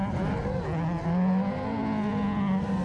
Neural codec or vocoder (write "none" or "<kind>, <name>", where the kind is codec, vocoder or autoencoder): none